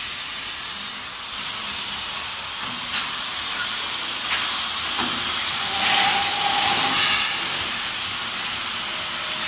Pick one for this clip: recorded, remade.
recorded